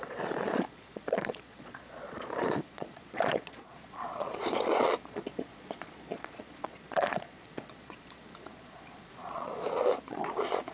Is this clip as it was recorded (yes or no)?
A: no